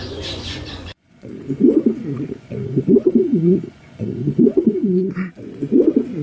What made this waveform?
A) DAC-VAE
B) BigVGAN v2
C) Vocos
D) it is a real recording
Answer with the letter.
C